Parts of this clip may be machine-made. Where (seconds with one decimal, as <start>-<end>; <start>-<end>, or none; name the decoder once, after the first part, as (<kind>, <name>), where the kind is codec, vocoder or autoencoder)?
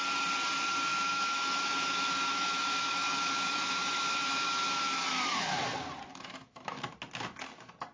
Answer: 0.9-5.6 (autoencoder, DAC-VAE); 6.1-6.8